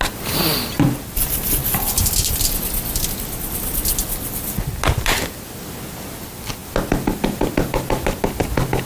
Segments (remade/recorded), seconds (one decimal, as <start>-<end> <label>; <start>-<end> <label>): 0.0-8.9 recorded